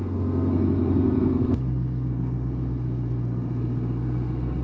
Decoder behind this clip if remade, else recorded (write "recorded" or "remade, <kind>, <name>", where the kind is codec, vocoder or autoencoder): remade, codec, SNAC